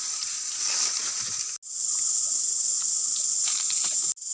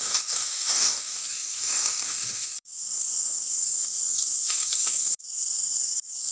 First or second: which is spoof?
second